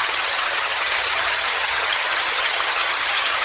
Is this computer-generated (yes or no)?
yes